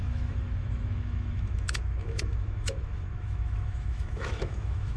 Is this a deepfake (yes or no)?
yes